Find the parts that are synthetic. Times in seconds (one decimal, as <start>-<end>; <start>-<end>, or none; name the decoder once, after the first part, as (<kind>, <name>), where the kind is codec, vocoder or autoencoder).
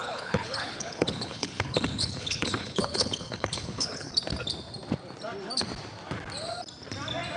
0.0-4.1 (codec, HILCodec)